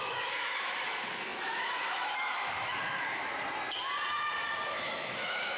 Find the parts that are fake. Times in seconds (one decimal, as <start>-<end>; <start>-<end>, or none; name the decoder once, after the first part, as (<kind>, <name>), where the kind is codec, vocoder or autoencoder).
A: 0.0-3.3 (autoencoder, DAC-VAE); 4.7-5.6